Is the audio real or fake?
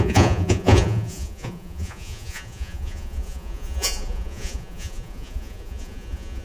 fake